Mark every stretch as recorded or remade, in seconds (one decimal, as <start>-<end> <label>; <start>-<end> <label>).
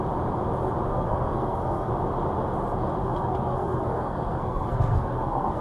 0.0-0.9 recorded; 0.9-1.9 remade; 1.9-3.0 recorded; 3.0-5.6 remade